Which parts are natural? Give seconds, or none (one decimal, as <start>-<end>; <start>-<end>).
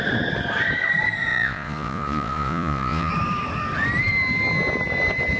0.0-1.3; 3.1-5.4